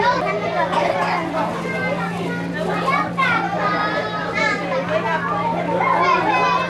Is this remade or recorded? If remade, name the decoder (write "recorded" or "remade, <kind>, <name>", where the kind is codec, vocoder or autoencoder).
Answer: recorded